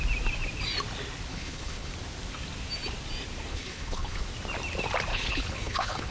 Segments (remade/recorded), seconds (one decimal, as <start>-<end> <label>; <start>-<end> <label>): 0.0-1.3 recorded; 1.3-1.9 remade; 1.9-3.5 recorded; 3.5-4.2 remade; 4.2-5.1 recorded; 5.1-6.1 remade